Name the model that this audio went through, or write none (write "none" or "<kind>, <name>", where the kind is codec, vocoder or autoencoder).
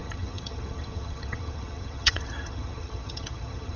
vocoder, HiFi-GAN